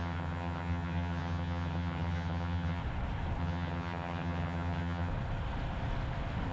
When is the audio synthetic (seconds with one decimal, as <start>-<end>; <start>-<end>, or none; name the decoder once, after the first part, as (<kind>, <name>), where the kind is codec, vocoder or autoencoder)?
0.0-2.8 (vocoder, HiFi-GAN); 3.4-5.1